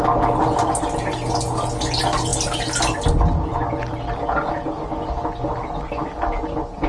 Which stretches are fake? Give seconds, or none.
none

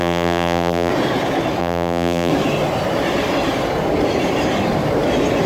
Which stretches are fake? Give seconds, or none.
0.0-0.9 (vocoder, BigVGAN v2); 1.6-2.3

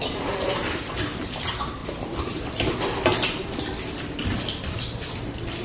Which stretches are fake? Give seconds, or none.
0.0-1.8 (vocoder, BigVGAN v2)